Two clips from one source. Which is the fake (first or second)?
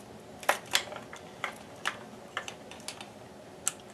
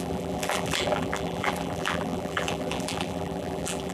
second